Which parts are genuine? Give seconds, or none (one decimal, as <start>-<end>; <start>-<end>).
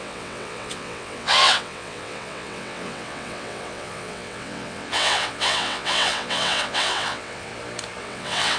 7.5-8.0